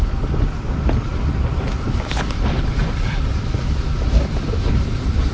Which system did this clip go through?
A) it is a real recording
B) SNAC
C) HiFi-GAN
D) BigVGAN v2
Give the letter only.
D